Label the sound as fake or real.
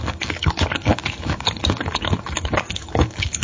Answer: fake